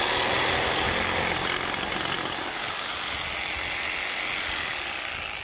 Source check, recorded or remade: recorded